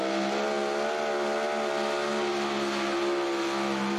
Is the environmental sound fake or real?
real